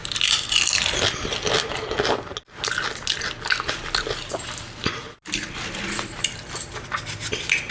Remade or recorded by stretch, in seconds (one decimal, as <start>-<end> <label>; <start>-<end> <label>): 0.0-7.7 recorded